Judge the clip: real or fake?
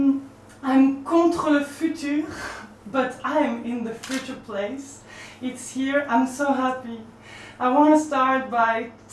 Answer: real